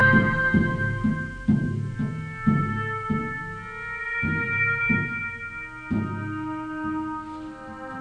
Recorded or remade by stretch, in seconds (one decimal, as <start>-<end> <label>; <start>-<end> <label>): 0.0-8.0 recorded